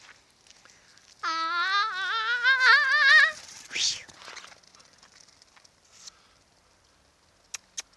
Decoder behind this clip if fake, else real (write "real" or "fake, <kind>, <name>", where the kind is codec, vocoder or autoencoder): real